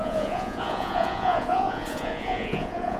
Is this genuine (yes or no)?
no